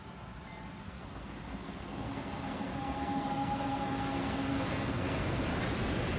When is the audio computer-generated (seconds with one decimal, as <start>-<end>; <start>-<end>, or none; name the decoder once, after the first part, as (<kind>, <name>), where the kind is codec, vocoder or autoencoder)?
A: 0.8-5.5 (codec, SNAC)